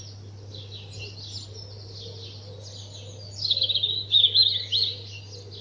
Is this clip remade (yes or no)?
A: no